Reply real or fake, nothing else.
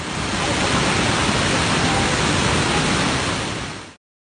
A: real